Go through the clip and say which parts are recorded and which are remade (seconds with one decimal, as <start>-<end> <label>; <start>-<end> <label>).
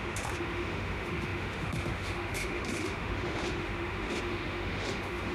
0.0-5.3 remade